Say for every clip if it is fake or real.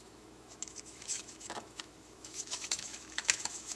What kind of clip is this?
fake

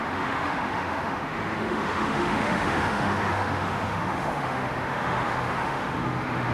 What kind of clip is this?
fake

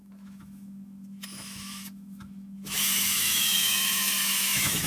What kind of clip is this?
fake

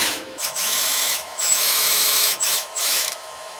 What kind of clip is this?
fake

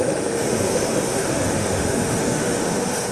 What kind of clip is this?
fake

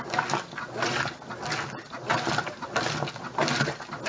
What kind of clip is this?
real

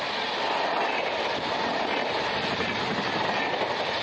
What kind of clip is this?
real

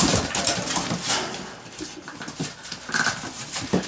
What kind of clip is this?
real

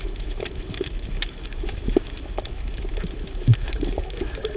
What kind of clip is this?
fake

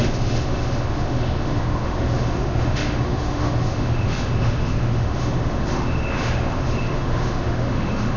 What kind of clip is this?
fake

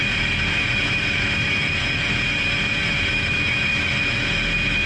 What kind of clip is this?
fake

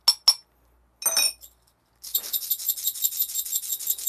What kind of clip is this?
real